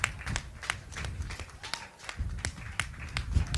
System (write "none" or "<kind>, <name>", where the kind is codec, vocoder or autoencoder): none